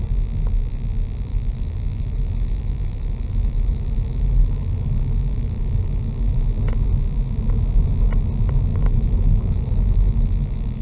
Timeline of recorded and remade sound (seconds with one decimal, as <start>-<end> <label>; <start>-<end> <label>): 0.0-1.3 recorded; 1.3-6.5 remade; 6.5-8.7 recorded; 8.7-10.8 remade